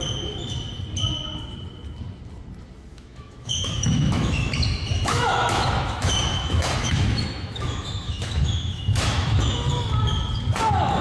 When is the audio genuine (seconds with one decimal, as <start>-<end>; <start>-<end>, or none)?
0.0-2.9; 4.5-4.9; 9.7-11.0

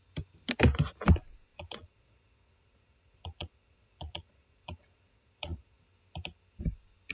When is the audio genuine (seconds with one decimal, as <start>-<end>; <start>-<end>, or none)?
0.0-1.5; 5.8-7.1

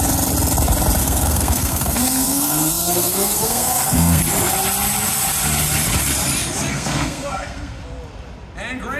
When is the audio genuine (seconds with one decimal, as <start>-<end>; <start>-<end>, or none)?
0.0-1.0; 4.2-6.7; 7.8-9.0